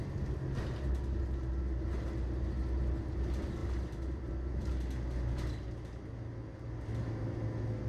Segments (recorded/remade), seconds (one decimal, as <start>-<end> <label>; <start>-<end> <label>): 0.0-3.6 recorded; 3.6-4.3 remade; 4.3-7.9 recorded